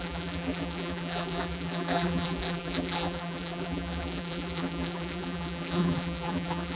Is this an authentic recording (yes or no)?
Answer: no